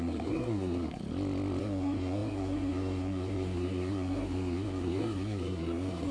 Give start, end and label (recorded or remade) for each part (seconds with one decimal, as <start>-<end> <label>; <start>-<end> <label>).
0.0-1.0 remade; 1.0-1.6 recorded; 1.6-6.1 remade